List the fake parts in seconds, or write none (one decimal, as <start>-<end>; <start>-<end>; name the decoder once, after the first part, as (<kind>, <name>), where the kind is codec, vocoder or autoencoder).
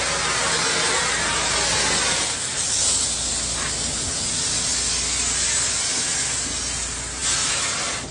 none